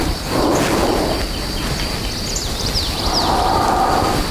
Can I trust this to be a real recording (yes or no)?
yes